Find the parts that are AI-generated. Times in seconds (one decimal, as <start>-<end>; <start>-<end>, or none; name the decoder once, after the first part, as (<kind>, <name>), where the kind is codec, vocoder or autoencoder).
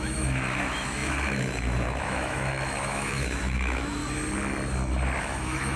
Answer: 0.0-4.0 (autoencoder, DAC-VAE); 5.2-5.8